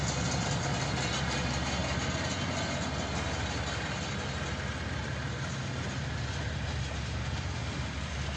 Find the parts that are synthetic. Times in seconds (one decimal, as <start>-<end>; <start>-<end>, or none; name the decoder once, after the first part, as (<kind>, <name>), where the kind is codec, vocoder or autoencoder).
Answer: none